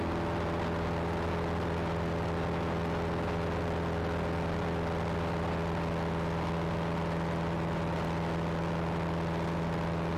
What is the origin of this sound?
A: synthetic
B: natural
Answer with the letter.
B